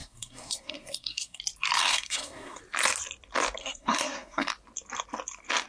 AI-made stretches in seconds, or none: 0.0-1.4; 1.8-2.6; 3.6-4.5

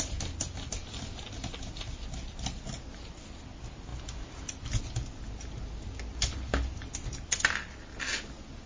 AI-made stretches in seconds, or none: none

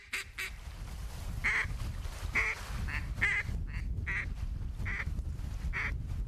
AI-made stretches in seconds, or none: none

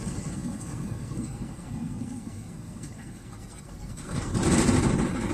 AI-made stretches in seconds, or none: 0.0-4.3

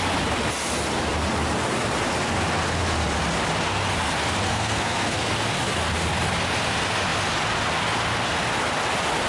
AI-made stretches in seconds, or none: 4.5-5.3

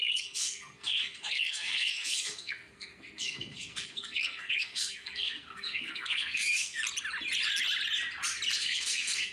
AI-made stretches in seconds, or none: 0.0-6.8; 8.6-9.3

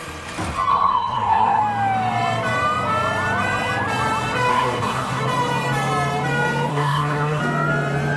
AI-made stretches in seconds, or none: 0.7-1.6; 4.5-5.2; 6.7-7.4

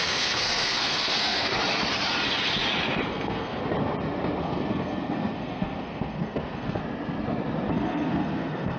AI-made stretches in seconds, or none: 0.0-1.5; 3.1-3.6; 4.4-6.8; 7.7-8.8